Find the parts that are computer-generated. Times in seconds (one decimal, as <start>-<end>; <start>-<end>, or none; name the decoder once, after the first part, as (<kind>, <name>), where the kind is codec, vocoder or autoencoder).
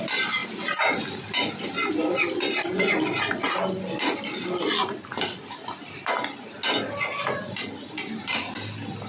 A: none